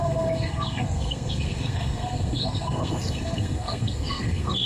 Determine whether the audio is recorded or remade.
remade